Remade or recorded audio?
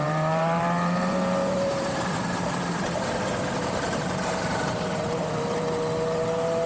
remade